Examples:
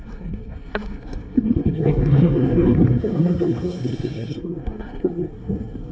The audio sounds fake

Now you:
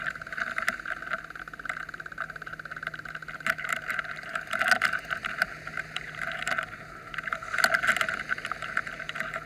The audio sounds real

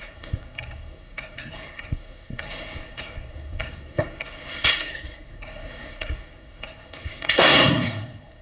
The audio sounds fake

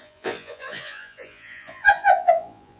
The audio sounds fake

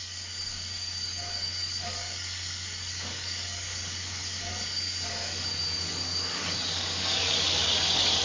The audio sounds fake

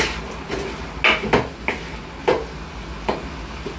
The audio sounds real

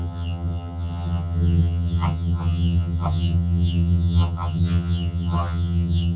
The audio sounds fake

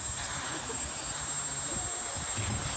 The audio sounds real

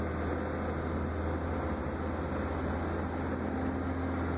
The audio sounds real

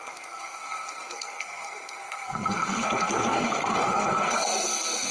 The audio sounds fake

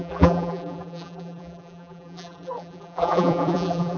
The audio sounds fake